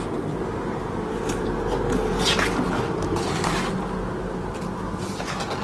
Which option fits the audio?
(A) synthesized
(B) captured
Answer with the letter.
B